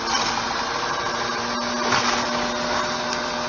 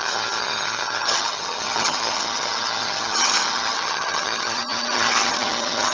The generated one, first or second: second